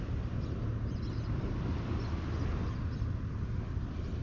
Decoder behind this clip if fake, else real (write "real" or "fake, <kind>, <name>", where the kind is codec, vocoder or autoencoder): real